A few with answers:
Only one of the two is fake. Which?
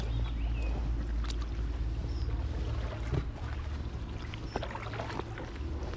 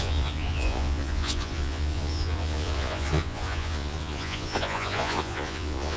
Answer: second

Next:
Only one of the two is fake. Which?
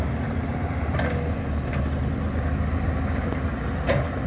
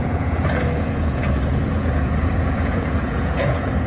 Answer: second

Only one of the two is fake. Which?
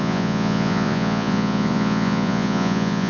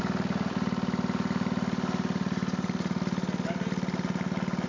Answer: first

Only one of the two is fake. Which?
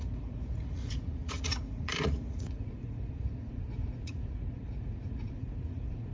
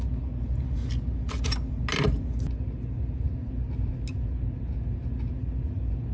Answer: first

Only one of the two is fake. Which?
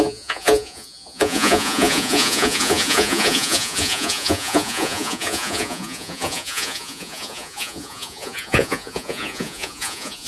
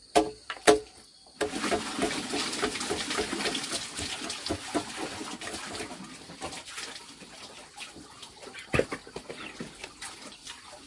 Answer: first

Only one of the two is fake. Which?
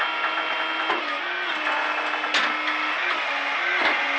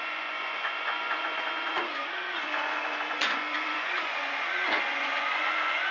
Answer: second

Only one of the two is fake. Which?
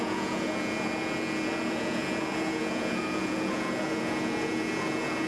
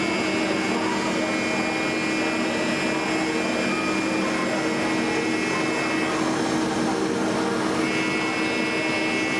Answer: first